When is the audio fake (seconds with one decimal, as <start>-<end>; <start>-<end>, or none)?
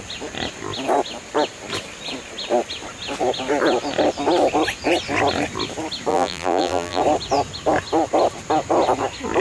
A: 6.1-7.0